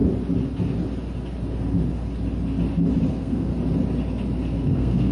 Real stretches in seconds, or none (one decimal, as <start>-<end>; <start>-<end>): 0.0-3.1; 3.5-4.5